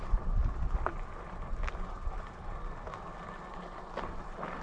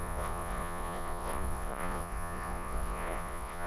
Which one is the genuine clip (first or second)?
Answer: first